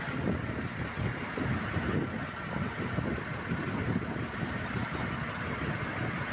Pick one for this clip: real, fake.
real